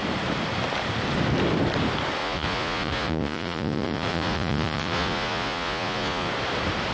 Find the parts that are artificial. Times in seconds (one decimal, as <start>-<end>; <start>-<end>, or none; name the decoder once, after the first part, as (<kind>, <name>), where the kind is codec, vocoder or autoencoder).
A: 2.2-6.3 (vocoder, Vocos)